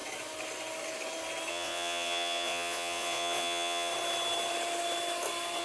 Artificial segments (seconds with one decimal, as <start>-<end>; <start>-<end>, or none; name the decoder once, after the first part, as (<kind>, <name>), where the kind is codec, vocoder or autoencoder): 1.5-3.9 (vocoder, Vocos)